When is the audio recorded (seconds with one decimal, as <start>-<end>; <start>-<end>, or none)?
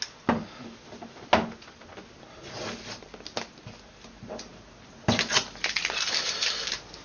0.0-7.0